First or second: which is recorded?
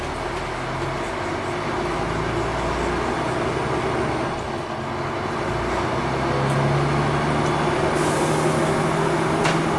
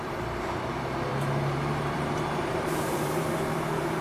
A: first